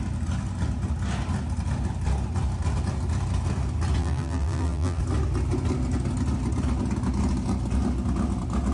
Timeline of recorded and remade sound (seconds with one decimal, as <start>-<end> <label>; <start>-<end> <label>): 0.0-4.0 recorded; 4.0-5.0 remade; 5.0-8.7 recorded